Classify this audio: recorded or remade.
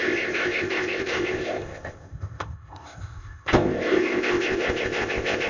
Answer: remade